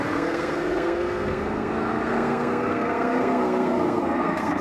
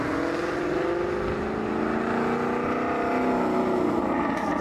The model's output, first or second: first